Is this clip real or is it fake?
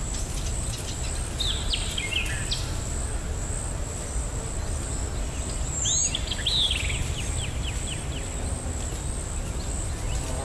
real